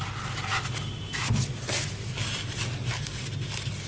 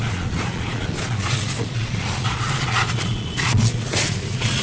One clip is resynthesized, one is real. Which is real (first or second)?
first